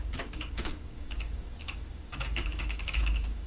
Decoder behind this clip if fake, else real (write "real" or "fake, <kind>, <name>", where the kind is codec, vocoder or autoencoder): fake, codec, DAC